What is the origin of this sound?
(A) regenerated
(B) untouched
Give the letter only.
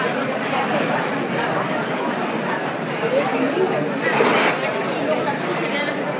A